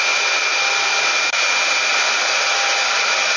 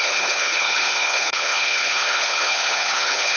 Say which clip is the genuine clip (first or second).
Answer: first